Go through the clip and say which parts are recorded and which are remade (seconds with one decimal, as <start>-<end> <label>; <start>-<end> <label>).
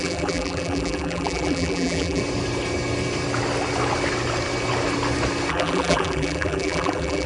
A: 0.0-2.2 remade; 2.2-5.5 recorded; 5.5-7.3 remade